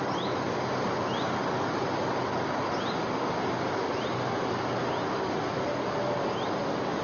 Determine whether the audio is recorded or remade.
recorded